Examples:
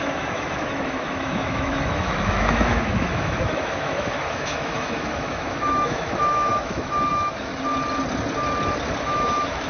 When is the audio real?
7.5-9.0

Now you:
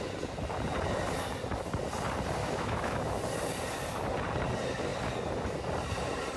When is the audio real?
0.0-2.4; 3.2-6.4

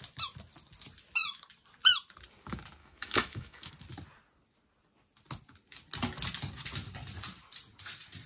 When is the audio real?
0.0-2.8; 3.7-8.3

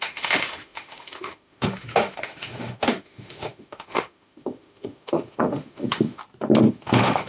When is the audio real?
6.2-6.7

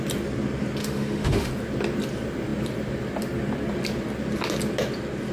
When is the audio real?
0.0-0.8; 1.5-5.3

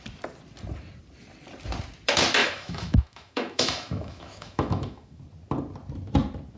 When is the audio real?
0.0-2.4; 5.2-6.6